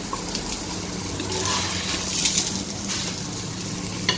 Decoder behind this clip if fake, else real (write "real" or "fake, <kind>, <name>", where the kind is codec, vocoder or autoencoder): real